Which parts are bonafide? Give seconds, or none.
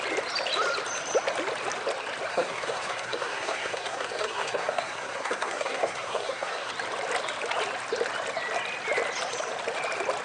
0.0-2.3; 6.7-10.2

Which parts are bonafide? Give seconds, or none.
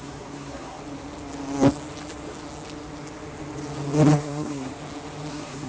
0.8-4.2; 4.7-5.3